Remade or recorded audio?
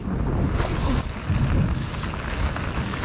recorded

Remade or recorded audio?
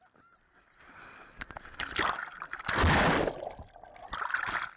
recorded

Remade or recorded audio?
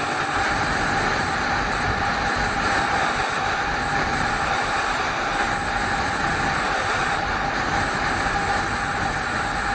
recorded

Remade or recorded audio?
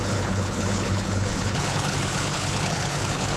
remade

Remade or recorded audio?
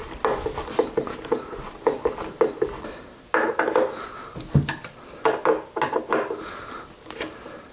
recorded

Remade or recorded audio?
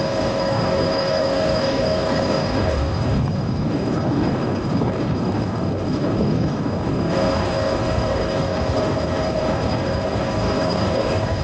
remade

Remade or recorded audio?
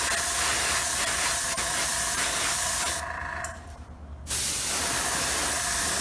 recorded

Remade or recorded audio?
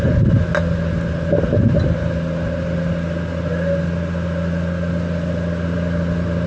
recorded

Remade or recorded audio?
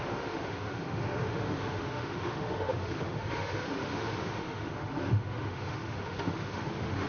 remade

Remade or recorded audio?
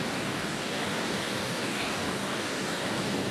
remade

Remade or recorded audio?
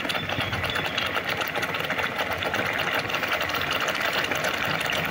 recorded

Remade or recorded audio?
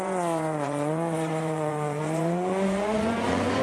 remade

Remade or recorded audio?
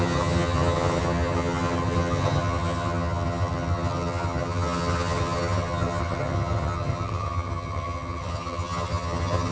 remade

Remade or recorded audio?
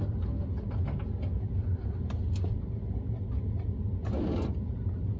recorded